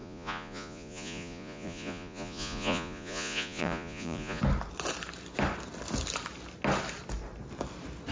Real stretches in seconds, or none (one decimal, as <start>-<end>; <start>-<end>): 4.4-8.1